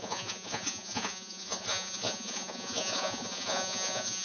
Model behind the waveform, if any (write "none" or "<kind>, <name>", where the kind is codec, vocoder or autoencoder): vocoder, Vocos